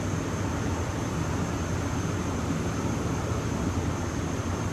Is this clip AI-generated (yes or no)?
no